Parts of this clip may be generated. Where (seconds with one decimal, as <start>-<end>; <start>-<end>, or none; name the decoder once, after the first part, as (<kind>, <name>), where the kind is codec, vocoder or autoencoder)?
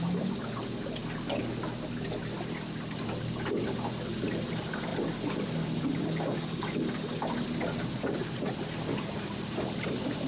none